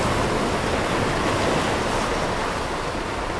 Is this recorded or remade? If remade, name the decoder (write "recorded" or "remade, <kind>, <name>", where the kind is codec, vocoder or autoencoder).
recorded